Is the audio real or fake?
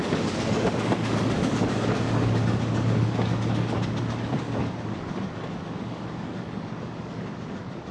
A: fake